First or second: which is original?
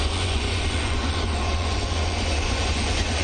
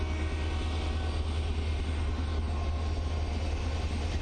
second